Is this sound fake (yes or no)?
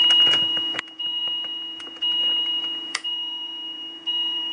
yes